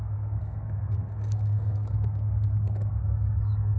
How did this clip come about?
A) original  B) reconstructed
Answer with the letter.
B